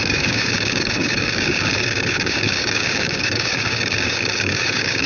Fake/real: fake